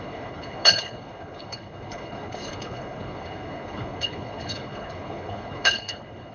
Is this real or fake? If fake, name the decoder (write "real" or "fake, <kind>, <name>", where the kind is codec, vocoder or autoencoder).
fake, codec, HILCodec